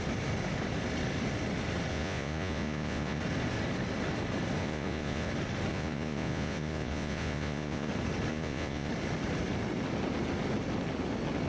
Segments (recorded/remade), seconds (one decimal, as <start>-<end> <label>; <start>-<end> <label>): 0.0-1.9 recorded; 1.9-3.2 remade; 3.2-4.6 recorded; 4.6-5.3 remade; 5.3-5.7 recorded; 5.7-7.9 remade; 7.9-8.3 recorded; 8.3-8.9 remade; 8.9-11.5 recorded

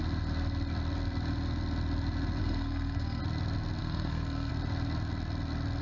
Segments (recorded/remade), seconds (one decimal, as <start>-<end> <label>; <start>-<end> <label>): 0.0-2.4 recorded; 2.4-3.2 remade; 3.2-3.8 recorded; 3.8-4.5 remade; 4.5-5.8 recorded

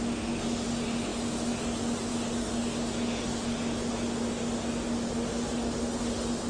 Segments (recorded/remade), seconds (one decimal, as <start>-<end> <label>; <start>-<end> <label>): 0.0-6.5 recorded

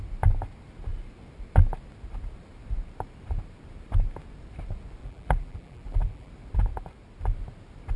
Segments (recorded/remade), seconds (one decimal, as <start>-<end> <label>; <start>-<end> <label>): 0.0-5.0 recorded; 5.0-6.3 remade; 6.3-8.0 recorded

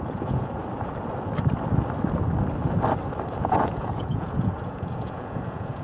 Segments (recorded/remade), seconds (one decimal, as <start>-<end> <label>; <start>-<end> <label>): 0.0-0.6 remade; 0.6-3.3 recorded; 3.3-5.8 remade

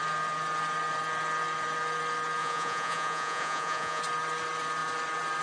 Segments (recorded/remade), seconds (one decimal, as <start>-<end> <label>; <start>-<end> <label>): 0.0-2.4 recorded; 2.4-4.0 remade; 4.0-5.4 recorded